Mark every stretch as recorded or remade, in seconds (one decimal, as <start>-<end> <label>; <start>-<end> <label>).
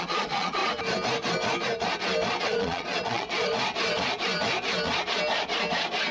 0.0-0.6 remade; 0.6-2.4 recorded; 2.4-3.5 remade; 3.5-6.1 recorded